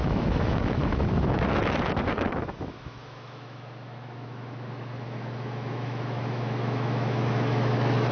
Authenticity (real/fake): fake